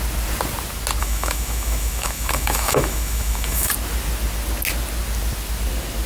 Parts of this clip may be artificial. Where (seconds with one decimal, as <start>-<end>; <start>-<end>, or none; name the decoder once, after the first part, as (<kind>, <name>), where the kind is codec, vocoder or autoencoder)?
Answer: 1.0-3.7 (autoencoder, DAC-VAE)